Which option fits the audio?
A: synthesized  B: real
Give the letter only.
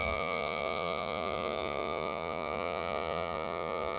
A